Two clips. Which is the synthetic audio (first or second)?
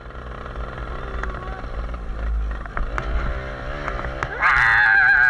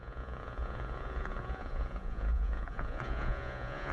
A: second